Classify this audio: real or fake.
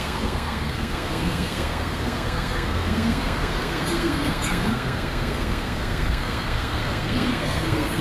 fake